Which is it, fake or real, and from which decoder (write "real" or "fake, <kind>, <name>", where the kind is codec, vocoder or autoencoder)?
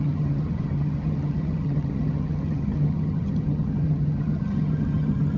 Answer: fake, vocoder, HiFi-GAN